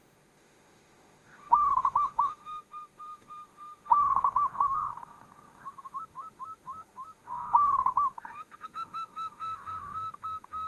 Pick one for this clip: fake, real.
fake